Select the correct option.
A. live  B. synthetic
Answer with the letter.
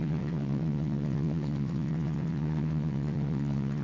B